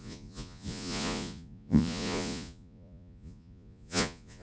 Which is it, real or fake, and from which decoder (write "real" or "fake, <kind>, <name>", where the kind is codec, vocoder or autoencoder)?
fake, vocoder, Vocos